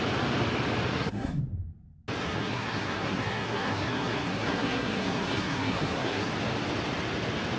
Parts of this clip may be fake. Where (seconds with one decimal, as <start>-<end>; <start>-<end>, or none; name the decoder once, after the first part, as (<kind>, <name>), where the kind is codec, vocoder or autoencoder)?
0.9-1.4 (codec, SNAC); 2.2-6.3